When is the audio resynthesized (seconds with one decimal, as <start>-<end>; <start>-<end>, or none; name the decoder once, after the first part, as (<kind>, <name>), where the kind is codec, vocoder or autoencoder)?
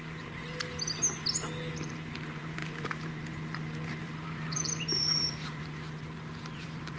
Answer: 0.0-0.4 (vocoder, BigVGAN v2); 1.7-7.0